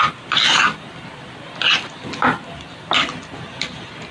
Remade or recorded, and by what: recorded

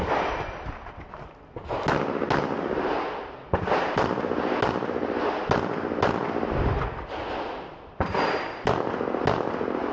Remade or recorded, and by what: recorded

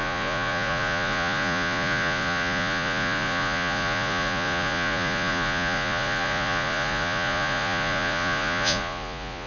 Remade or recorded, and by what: remade, vocoder, Vocos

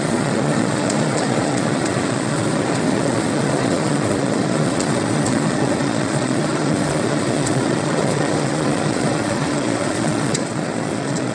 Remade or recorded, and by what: remade, vocoder, Vocos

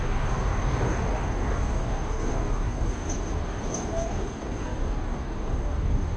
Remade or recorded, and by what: remade, codec, DAC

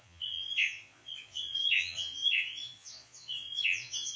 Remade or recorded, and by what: remade, vocoder, Vocos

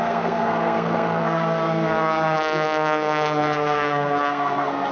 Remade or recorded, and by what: remade, codec, SNAC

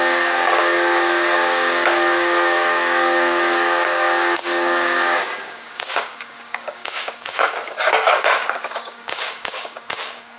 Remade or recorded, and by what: remade, codec, DAC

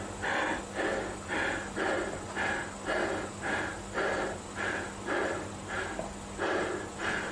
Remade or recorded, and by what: recorded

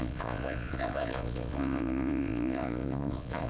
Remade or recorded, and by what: remade, vocoder, Vocos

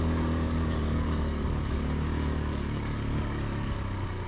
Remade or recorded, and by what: remade, codec, DAC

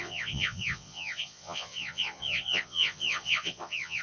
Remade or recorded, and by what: remade, vocoder, Vocos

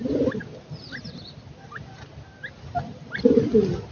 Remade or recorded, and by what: recorded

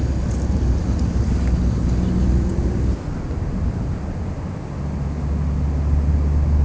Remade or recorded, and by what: recorded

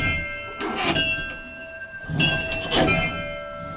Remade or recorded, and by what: recorded